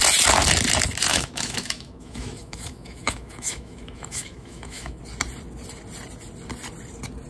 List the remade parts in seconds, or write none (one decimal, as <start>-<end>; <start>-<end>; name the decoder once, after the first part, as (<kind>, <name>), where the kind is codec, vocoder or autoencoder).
1.1-5.0 (autoencoder, DAC-VAE)